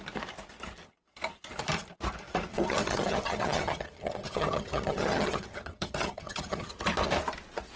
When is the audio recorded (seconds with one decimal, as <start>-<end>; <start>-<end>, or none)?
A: 0.0-2.5; 6.7-7.8